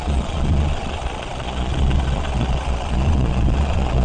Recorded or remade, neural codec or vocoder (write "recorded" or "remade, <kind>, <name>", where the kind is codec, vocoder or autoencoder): remade, vocoder, Vocos